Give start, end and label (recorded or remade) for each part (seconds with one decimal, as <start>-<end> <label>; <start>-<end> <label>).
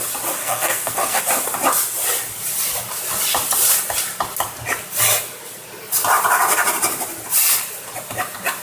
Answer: 0.0-0.4 recorded; 0.4-1.2 remade; 1.2-8.6 recorded